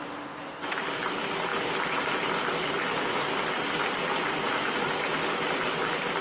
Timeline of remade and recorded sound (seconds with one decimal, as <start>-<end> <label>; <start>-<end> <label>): 0.0-1.5 recorded; 1.5-5.2 remade; 5.2-6.2 recorded